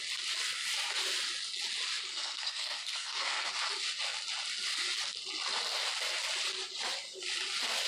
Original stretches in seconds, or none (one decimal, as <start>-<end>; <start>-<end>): 0.0-2.1; 3.5-7.9